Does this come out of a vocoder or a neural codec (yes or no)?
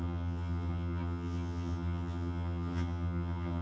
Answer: yes